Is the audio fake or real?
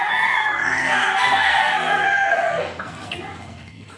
fake